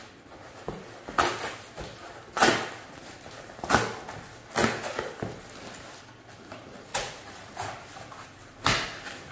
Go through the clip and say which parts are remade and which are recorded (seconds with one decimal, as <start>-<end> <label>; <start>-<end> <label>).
0.0-6.9 recorded; 6.9-7.7 remade; 7.7-9.3 recorded